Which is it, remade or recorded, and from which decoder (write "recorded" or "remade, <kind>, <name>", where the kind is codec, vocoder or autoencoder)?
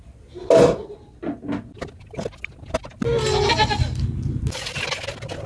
recorded